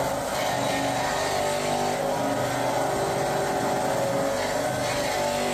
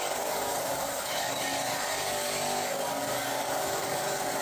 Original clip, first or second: first